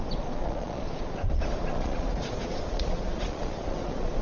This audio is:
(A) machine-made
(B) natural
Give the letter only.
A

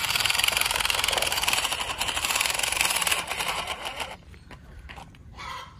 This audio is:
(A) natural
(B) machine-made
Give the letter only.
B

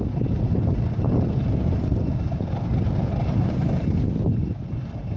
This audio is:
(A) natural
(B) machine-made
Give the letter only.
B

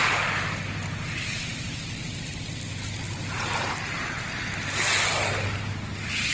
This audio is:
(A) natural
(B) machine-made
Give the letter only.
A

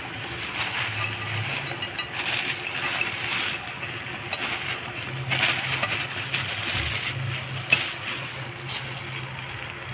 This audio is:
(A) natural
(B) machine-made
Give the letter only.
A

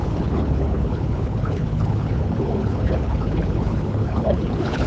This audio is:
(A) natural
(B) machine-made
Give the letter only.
B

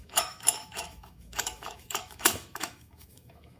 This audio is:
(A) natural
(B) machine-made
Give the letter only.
B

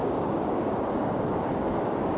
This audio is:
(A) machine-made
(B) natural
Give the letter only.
A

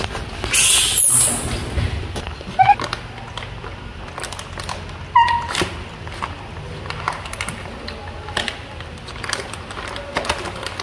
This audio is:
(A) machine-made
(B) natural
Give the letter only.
B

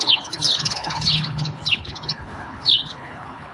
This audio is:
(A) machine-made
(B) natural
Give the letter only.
A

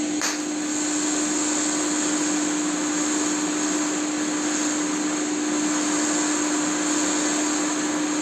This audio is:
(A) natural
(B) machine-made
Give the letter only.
A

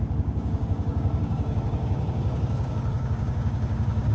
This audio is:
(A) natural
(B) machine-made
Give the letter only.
B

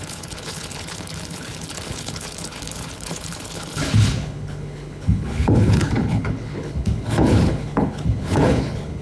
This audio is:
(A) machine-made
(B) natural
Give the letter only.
A